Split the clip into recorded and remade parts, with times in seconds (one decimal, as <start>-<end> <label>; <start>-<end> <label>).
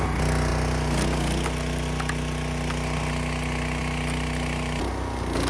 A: 0.0-5.5 recorded